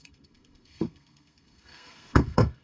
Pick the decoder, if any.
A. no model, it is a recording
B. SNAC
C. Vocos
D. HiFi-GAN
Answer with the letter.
B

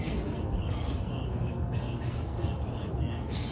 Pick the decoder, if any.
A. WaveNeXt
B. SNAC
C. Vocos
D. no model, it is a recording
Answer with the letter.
B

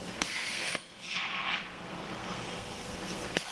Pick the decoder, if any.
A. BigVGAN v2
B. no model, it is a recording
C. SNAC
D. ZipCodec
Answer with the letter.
C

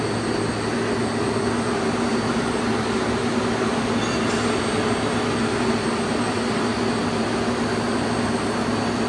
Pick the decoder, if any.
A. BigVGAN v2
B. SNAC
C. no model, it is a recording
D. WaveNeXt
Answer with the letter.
C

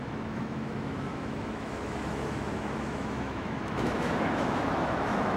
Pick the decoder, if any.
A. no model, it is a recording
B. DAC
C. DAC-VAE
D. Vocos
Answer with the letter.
C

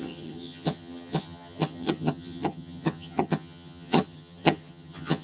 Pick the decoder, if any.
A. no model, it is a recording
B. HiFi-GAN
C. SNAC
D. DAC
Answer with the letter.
B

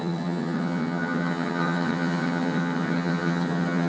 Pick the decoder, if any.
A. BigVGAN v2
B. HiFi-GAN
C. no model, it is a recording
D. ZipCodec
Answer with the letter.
B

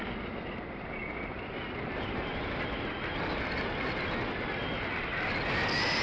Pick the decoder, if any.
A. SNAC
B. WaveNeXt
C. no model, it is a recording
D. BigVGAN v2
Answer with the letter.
C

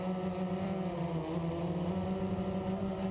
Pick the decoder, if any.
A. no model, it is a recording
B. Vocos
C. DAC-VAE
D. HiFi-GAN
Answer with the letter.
A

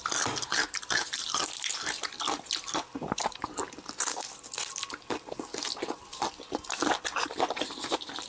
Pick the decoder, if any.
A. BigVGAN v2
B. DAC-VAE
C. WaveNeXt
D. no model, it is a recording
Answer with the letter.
D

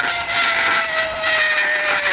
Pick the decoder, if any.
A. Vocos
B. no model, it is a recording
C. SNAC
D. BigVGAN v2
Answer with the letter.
B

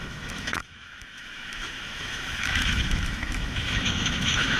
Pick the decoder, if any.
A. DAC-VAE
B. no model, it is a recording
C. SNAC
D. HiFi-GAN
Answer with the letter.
A